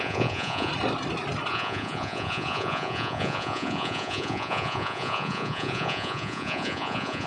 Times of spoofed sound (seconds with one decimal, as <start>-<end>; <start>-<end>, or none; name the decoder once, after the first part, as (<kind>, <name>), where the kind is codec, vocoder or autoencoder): 0.0-0.7 (vocoder, Vocos); 1.5-7.3